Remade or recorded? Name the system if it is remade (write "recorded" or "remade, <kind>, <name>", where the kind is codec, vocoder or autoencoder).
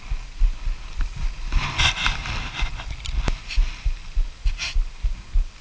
recorded